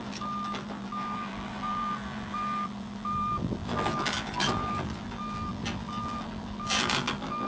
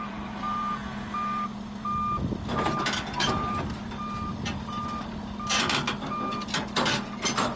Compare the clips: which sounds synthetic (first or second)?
first